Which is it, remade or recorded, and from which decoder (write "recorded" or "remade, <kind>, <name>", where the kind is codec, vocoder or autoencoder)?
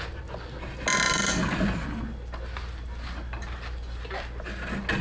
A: recorded